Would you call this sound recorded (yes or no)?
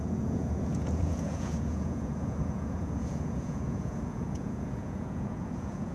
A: no